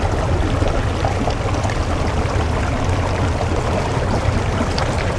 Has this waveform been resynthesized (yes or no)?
no